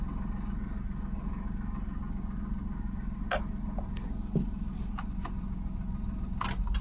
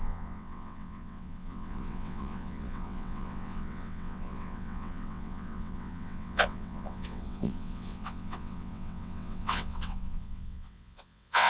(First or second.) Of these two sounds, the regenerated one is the second